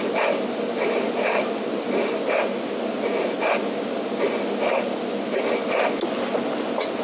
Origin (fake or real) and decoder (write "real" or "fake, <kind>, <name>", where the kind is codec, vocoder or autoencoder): real